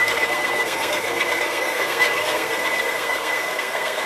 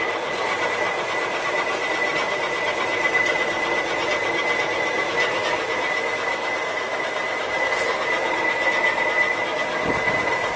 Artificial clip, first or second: first